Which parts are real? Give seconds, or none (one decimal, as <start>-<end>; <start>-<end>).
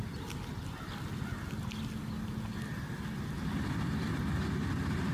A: 0.0-5.1